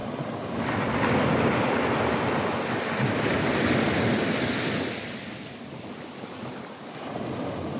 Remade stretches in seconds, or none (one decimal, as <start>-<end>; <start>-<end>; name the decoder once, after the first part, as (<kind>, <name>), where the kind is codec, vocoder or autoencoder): none